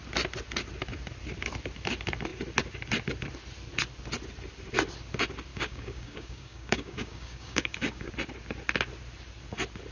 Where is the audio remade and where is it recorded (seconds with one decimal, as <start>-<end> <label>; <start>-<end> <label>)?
0.0-5.5 recorded; 5.5-8.1 remade; 8.1-9.9 recorded